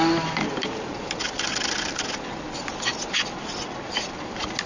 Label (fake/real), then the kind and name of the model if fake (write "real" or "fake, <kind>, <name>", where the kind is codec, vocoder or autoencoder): real